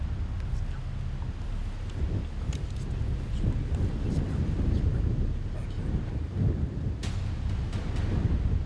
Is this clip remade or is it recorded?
recorded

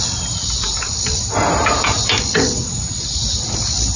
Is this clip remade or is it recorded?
recorded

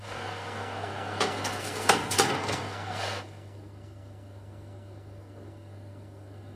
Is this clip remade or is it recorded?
remade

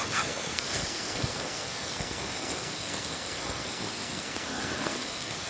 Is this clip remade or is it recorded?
remade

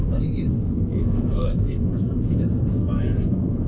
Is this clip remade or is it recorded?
remade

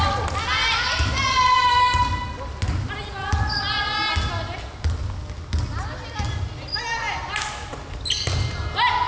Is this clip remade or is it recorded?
recorded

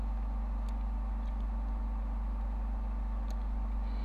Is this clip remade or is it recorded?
recorded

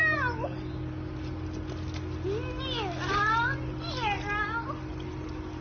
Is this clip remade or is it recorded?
recorded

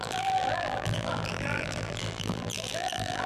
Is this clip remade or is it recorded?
remade